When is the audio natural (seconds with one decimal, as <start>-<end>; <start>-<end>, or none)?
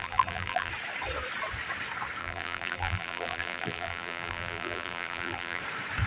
0.7-2.2; 5.6-6.1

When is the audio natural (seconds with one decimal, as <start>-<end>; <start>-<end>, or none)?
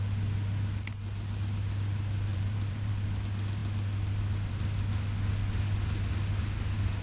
0.0-2.3; 2.9-7.0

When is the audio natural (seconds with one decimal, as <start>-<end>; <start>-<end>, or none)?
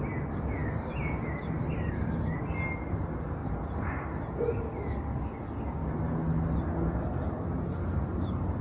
0.0-0.6; 1.9-8.6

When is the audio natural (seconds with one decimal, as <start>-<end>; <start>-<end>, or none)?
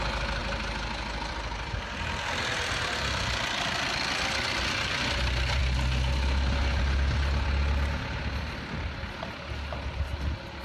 0.0-10.6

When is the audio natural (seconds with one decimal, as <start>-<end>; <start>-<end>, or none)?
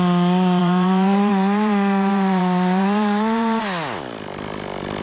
0.0-0.6; 3.6-5.0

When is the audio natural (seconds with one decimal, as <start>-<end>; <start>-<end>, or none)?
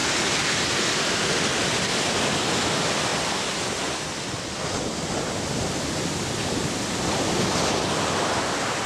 0.0-8.9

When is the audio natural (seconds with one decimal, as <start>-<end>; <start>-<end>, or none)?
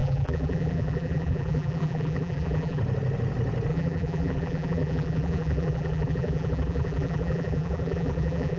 2.8-3.7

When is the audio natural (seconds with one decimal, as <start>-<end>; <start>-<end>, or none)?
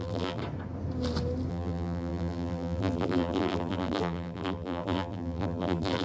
0.4-1.5